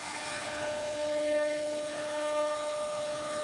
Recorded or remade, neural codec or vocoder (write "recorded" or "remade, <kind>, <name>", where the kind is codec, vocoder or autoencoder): remade, codec, HILCodec